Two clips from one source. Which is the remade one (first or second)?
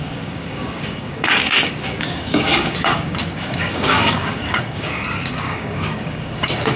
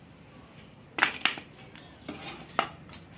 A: first